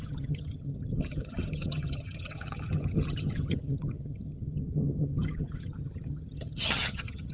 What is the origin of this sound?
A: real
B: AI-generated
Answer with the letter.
B